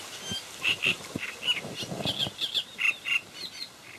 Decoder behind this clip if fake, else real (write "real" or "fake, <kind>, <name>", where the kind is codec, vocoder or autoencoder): real